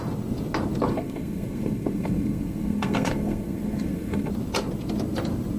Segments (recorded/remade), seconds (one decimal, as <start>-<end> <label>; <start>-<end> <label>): 0.0-0.9 recorded; 0.9-4.3 remade; 4.3-5.6 recorded